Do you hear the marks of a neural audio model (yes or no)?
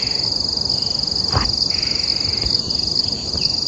no